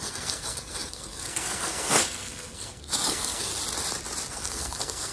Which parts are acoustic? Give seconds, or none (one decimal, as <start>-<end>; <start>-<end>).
3.5-4.3